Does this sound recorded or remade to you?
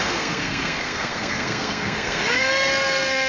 remade